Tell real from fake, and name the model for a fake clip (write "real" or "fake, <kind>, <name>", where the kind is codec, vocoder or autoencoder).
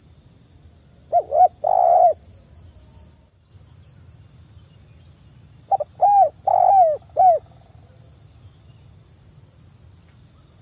real